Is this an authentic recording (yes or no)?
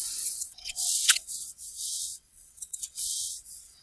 no